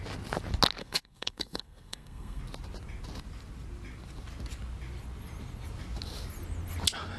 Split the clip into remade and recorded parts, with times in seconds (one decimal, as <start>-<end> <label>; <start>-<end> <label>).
0.0-0.8 recorded; 0.8-2.4 remade; 2.4-7.2 recorded